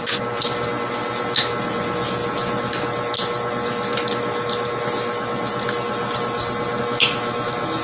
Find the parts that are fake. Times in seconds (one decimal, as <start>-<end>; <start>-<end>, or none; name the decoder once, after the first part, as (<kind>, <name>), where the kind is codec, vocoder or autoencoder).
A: none